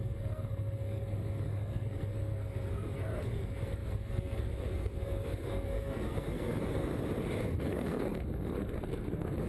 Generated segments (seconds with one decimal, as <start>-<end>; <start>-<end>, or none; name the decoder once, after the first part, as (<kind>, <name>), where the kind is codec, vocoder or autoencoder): 0.0-6.9 (codec, SNAC); 7.6-9.5